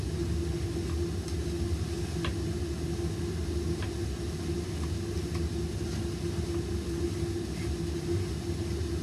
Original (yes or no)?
yes